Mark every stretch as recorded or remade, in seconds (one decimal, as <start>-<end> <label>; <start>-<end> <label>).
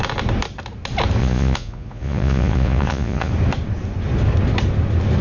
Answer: 0.0-1.2 recorded; 1.2-3.3 remade; 3.3-5.2 recorded